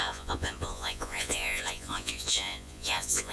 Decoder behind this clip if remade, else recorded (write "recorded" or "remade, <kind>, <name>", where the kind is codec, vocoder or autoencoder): remade, vocoder, Vocos